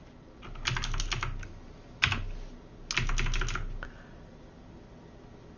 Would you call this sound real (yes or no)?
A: yes